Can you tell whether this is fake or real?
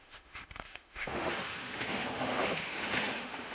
fake